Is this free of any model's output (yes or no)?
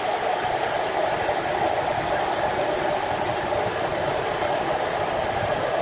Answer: yes